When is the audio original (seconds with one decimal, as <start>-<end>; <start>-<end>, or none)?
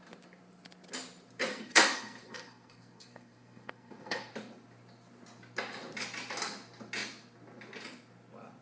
0.0-1.5; 4.3-8.6